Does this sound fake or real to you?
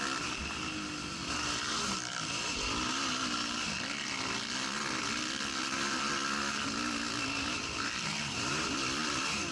real